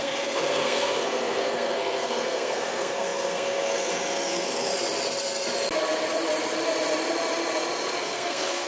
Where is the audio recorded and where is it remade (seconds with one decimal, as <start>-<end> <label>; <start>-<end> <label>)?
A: 0.0-4.7 remade; 4.7-8.0 recorded; 8.0-8.7 remade